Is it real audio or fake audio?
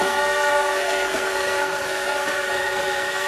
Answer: fake